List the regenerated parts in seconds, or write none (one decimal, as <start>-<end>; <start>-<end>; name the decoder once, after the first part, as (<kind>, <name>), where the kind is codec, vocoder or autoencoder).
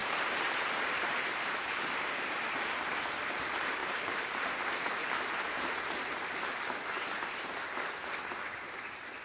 0.0-2.4 (vocoder, BigVGAN v2); 3.8-8.1